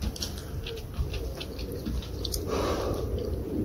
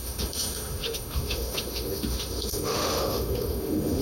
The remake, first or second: second